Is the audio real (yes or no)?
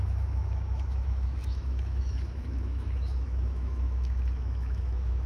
no